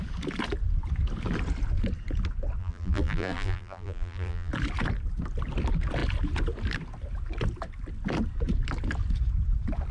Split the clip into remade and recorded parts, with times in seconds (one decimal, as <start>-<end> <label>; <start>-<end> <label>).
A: 0.0-2.6 recorded; 2.6-4.5 remade; 4.5-9.9 recorded

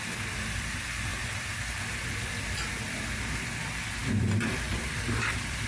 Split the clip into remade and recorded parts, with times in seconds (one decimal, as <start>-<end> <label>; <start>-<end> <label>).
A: 0.0-1.1 recorded; 1.1-2.7 remade; 2.7-4.0 recorded; 4.0-5.7 remade

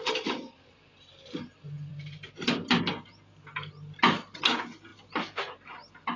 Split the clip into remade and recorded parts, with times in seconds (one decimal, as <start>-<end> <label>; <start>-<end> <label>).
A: 0.0-6.2 recorded

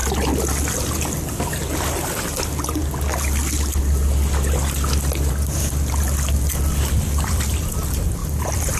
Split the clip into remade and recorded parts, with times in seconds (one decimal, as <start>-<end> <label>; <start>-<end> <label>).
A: 0.0-2.4 recorded; 2.4-2.8 remade; 2.8-5.3 recorded; 5.3-8.8 remade

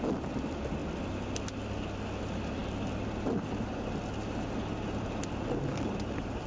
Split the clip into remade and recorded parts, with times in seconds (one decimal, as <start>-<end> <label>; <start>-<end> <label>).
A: 0.0-0.8 remade; 0.8-2.2 recorded; 2.2-2.6 remade; 2.6-5.6 recorded; 5.6-6.5 remade

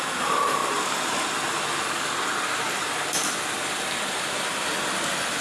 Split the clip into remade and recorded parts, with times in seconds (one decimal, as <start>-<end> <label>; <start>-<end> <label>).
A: 0.0-1.5 recorded; 1.5-4.7 remade; 4.7-5.4 recorded

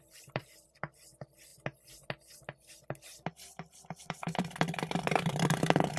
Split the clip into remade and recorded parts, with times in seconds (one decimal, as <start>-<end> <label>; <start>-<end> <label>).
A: 0.0-1.5 remade; 1.5-3.6 recorded; 3.6-6.0 remade